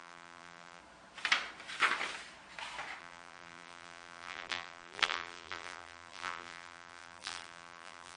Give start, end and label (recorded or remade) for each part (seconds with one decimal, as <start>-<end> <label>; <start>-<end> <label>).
0.0-0.8 remade; 0.8-3.0 recorded; 3.0-8.2 remade